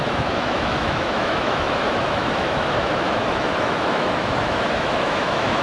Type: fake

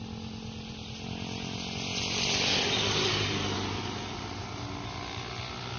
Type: real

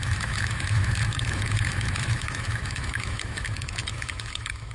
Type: fake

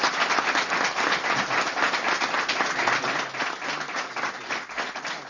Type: real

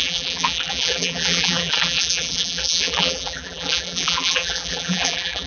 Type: fake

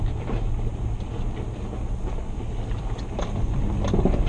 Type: real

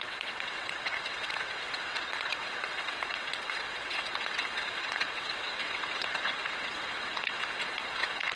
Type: fake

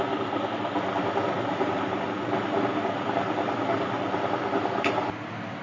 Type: real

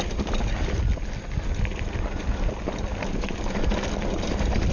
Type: real